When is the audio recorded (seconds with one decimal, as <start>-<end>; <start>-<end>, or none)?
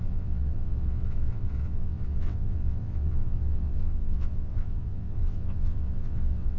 none